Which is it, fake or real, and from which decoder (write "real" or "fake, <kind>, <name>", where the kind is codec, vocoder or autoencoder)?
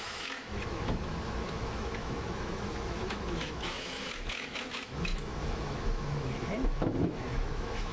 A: fake, autoencoder, DAC-VAE